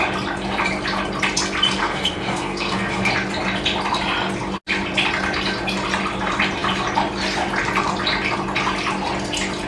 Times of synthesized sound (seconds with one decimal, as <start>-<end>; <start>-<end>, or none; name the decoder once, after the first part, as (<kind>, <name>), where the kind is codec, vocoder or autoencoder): 1.8-3.1 (codec, SNAC)

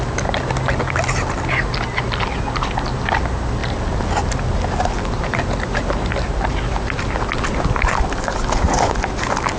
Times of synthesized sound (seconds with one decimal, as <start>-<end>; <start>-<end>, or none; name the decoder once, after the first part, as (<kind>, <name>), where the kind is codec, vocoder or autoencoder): none

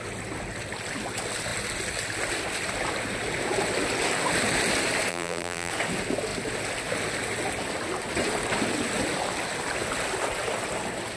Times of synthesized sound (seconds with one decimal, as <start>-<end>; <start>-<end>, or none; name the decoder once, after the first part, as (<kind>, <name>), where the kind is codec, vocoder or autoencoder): 5.1-5.7 (vocoder, BigVGAN v2)

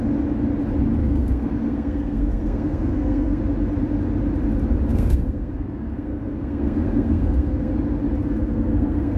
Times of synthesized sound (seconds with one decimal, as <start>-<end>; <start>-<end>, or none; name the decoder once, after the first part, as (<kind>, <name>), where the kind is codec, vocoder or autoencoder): 1.0-3.4 (codec, SNAC); 4.9-7.7; 8.2-9.2

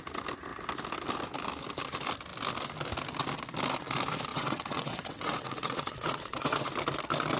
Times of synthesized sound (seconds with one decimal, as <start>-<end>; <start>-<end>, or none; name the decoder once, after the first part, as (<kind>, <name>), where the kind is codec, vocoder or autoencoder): 4.3-6.7 (vocoder, WaveNeXt)

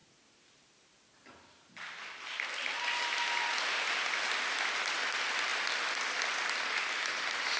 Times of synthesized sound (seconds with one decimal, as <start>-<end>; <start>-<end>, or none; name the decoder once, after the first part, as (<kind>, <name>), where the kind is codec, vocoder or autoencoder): none

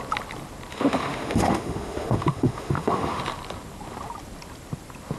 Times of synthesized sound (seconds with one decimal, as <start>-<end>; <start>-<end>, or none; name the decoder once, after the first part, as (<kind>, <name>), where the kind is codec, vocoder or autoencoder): 0.7-3.2 (autoencoder, DAC-VAE)

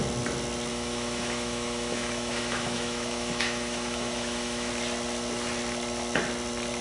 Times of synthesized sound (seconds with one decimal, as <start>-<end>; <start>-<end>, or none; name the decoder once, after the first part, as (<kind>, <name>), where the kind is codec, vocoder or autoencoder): 0.7-4.7 (autoencoder, DAC-VAE)